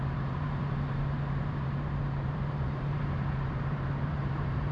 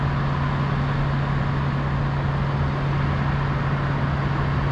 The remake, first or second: first